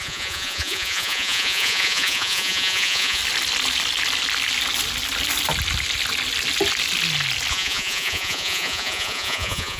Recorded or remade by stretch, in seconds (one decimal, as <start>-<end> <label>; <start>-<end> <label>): 0.0-3.2 remade; 3.2-7.5 recorded; 7.5-9.8 remade